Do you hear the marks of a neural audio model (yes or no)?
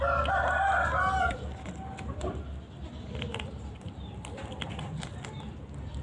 no